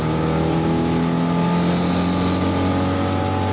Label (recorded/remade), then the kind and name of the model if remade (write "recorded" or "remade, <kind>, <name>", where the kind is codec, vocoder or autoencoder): recorded